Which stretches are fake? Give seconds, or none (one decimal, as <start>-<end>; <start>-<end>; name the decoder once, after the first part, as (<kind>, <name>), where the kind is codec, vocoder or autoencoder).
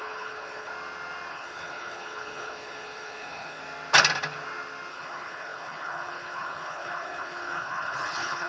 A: 0.0-0.7 (codec, HILCodec); 1.3-3.6; 4.9-8.5